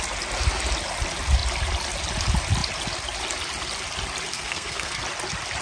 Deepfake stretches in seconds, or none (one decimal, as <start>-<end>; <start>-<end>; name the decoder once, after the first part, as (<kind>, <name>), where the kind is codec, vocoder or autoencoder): 4.3-5.0 (codec, SNAC)